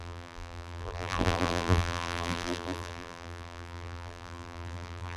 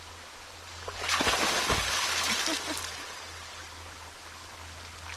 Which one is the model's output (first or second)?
first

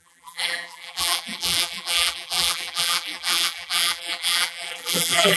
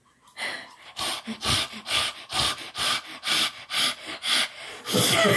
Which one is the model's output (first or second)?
first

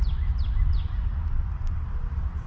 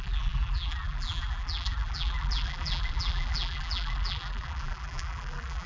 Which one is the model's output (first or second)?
second